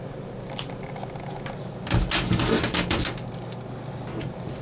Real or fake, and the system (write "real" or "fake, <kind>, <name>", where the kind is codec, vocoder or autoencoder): real